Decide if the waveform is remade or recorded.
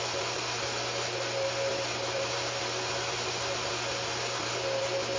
recorded